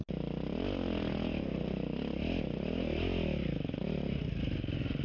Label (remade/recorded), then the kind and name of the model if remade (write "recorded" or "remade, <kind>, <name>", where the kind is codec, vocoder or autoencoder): recorded